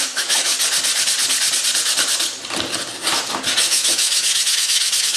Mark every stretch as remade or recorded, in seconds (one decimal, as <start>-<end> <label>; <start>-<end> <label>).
0.0-0.5 remade; 0.5-3.6 recorded; 3.6-5.2 remade